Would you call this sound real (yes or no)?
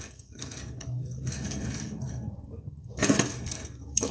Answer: no